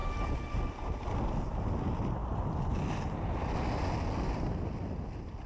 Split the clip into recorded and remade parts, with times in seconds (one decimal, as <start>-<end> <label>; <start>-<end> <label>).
0.0-2.2 recorded; 2.2-3.0 remade; 3.0-5.5 recorded